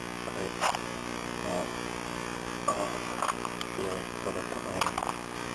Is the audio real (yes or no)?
yes